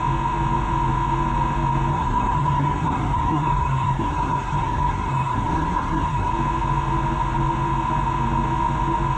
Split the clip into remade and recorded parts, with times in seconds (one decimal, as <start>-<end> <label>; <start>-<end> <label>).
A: 0.0-1.9 recorded; 1.9-6.3 remade; 6.3-9.2 recorded